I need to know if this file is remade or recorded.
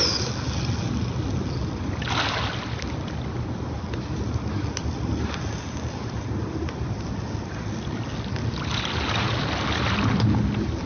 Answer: recorded